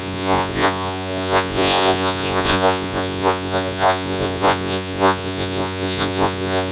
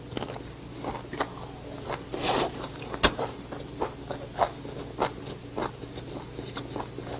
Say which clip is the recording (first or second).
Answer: second